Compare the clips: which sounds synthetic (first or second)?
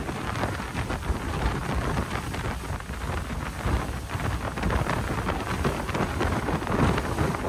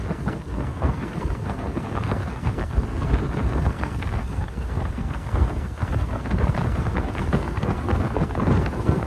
second